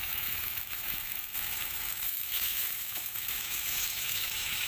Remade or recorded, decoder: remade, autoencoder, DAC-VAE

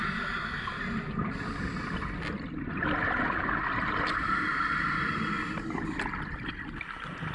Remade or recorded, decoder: recorded